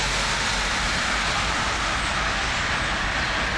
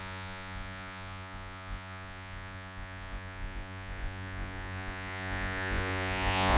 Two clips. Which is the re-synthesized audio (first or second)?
second